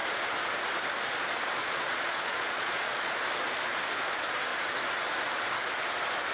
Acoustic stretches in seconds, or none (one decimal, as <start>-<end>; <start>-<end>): 0.0-1.6; 3.1-6.3